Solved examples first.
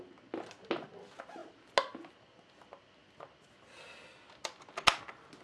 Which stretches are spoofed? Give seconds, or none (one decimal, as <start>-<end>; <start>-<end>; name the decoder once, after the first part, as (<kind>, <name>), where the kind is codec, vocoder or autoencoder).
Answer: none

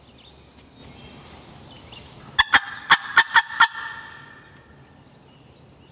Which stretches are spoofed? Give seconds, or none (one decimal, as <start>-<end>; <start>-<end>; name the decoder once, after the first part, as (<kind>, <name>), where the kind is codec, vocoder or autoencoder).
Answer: none

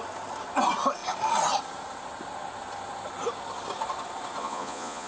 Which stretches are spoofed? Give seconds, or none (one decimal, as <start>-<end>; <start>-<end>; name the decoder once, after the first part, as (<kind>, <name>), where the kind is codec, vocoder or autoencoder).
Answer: 4.4-5.1 (vocoder, Vocos)

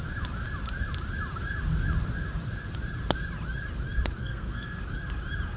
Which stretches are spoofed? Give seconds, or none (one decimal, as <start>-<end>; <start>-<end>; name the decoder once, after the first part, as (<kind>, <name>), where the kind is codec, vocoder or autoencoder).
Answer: 4.2-4.8 (codec, SNAC)

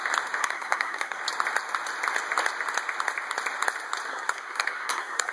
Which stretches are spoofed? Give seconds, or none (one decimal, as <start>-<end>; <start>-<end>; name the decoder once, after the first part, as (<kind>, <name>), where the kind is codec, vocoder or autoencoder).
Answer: 0.4-1.2 (codec, SNAC); 4.1-5.3

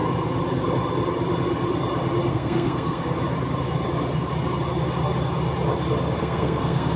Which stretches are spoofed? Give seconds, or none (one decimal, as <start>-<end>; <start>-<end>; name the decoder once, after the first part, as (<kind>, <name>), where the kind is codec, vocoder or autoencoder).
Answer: 2.3-3.1 (codec, SNAC); 6.2-7.0